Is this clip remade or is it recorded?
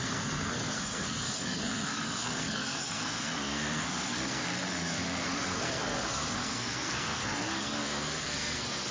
remade